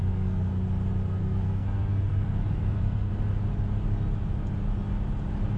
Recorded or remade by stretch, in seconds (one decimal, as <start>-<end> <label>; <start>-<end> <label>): 0.0-0.5 remade; 0.5-1.2 recorded; 1.2-3.1 remade; 3.1-5.6 recorded